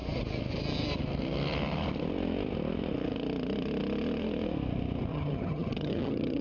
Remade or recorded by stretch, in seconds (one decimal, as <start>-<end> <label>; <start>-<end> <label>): 0.0-5.1 recorded; 5.1-6.4 remade